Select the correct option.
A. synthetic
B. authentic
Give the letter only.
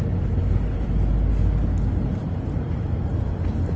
B